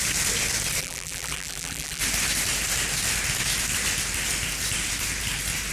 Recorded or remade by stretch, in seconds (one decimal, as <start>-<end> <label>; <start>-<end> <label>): 0.0-0.8 recorded; 0.8-2.0 remade; 2.0-5.7 recorded